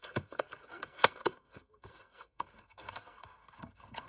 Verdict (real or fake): fake